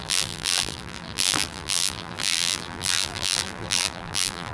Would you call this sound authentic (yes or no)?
no